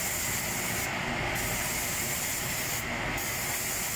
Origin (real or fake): real